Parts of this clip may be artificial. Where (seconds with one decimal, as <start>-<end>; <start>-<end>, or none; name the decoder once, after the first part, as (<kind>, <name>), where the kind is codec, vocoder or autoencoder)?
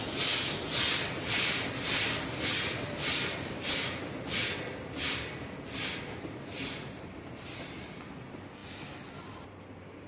none